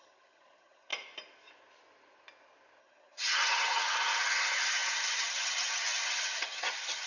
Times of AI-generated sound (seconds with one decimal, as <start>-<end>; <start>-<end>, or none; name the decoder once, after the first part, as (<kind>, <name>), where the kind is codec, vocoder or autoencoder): 0.0-0.9 (vocoder, HiFi-GAN); 2.8-7.1